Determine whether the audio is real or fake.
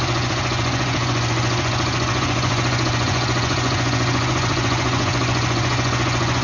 fake